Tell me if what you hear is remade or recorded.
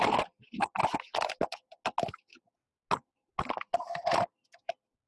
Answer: recorded